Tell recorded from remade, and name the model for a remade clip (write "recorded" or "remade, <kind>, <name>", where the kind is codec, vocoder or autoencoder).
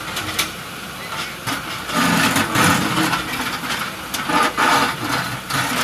recorded